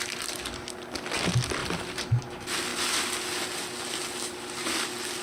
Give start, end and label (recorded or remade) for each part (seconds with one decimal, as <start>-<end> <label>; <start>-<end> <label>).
0.0-1.6 recorded; 1.6-2.2 remade; 2.2-5.2 recorded